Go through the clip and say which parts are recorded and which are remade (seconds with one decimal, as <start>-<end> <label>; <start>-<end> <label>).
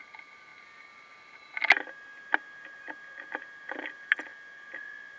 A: 0.0-5.2 recorded